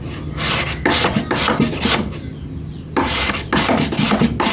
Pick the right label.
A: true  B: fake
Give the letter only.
A